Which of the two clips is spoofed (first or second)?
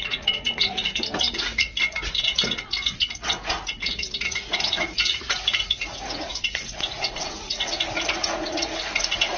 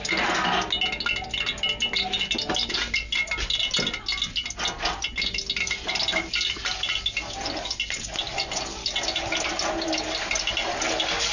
first